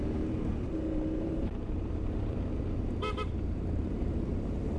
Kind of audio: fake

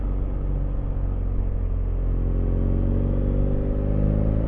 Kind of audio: real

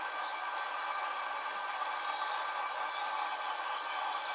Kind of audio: real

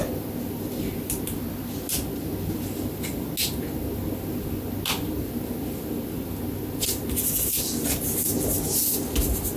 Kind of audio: real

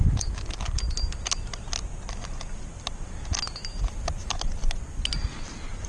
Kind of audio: real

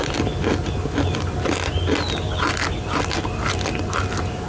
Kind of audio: real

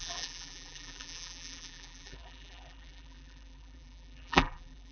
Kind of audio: fake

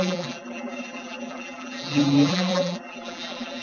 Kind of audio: fake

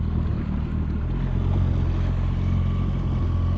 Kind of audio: fake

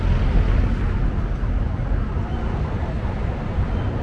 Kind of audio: real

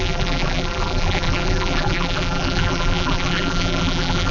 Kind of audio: fake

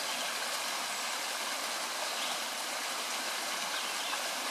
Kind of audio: real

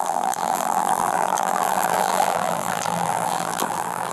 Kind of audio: fake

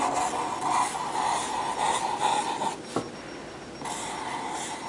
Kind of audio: real